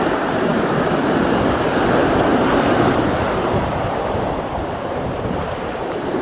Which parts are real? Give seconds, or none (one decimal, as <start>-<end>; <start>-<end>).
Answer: 0.0-2.3

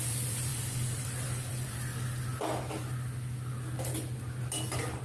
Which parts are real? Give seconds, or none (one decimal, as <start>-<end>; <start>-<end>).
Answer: 1.9-5.0

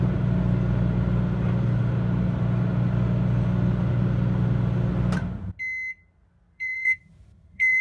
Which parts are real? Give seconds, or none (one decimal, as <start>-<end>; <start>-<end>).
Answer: 0.0-6.2

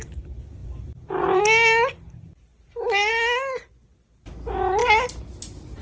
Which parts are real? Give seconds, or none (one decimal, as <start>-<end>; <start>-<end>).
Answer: 0.0-0.6; 1.4-2.5; 3.1-5.8

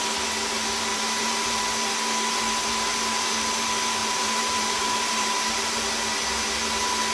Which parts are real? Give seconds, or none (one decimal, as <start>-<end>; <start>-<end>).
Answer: 0.0-0.9; 1.6-2.9; 3.5-4.0; 5.8-7.1

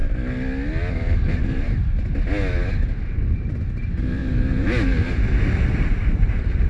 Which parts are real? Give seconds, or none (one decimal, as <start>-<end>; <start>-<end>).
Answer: 0.0-0.9; 1.4-3.8; 4.2-5.3